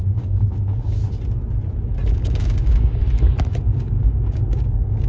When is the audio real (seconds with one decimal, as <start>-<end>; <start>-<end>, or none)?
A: 1.0-2.1; 3.0-3.6